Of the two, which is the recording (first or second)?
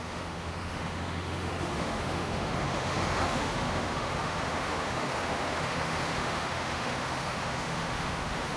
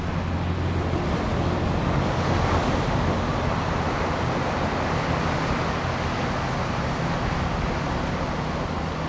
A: second